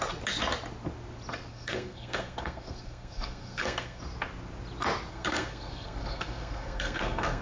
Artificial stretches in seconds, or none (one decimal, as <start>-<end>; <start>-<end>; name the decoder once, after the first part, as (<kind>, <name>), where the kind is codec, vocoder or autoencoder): 1.5-4.0 (codec, SNAC); 5.1-7.4